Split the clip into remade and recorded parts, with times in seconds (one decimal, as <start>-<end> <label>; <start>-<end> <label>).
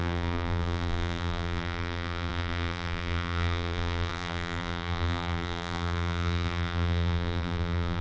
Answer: 0.0-8.0 remade